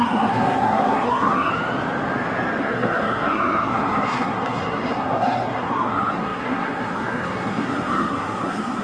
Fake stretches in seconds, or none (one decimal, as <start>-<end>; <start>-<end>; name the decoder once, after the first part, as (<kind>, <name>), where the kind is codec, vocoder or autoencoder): 0.0-1.5 (codec, SNAC); 2.6-8.8